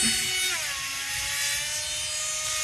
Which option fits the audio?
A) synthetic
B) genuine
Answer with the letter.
B